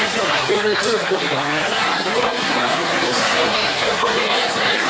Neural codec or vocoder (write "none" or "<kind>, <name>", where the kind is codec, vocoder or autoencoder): codec, SNAC